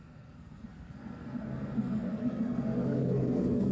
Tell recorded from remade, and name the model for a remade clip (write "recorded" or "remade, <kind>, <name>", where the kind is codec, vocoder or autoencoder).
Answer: remade, codec, SNAC